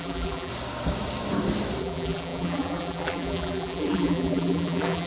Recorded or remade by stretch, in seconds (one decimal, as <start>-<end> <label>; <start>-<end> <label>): 0.0-0.5 remade; 0.5-1.8 recorded; 1.8-5.1 remade